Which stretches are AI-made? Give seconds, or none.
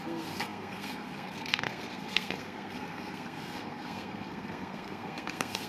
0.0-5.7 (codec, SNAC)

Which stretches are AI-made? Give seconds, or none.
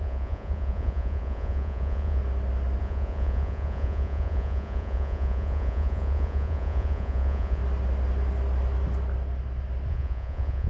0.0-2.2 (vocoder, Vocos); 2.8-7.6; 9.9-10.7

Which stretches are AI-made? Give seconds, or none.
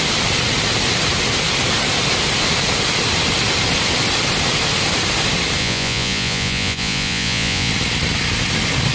5.6-7.7 (vocoder, Vocos)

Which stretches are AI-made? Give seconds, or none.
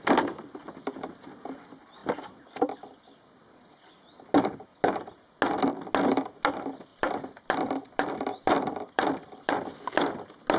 6.9-9.5 (vocoder, BigVGAN v2)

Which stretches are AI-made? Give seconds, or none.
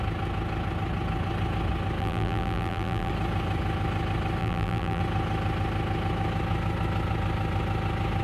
2.0-3.1 (vocoder, BigVGAN v2); 4.4-5.0